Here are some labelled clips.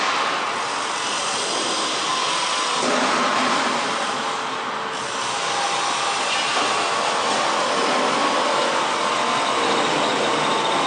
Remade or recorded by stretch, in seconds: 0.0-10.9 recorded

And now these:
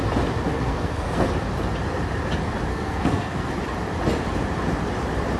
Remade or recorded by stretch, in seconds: 0.0-0.5 recorded; 0.5-1.3 remade; 1.3-2.7 recorded; 2.7-3.5 remade; 3.5-5.4 recorded

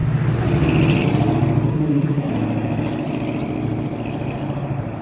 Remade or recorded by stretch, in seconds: 0.0-1.7 recorded; 1.7-2.3 remade; 2.3-5.0 recorded

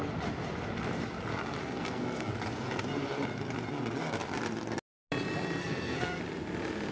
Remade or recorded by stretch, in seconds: 0.0-1.6 recorded; 1.6-2.3 remade; 2.3-5.6 recorded; 5.6-6.2 remade; 6.2-6.9 recorded

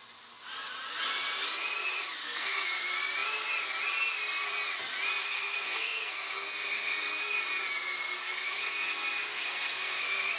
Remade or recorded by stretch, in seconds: 0.0-2.2 recorded; 2.2-2.8 remade; 2.8-5.2 recorded; 5.2-7.4 remade; 7.4-8.2 recorded; 8.2-10.4 remade

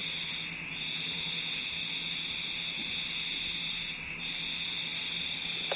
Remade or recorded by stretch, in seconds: 0.0-5.8 recorded

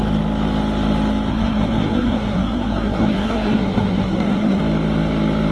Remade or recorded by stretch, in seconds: 0.0-1.3 recorded; 1.3-4.6 remade; 4.6-5.5 recorded

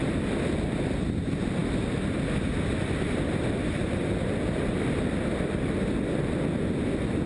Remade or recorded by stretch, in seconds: 0.0-7.3 recorded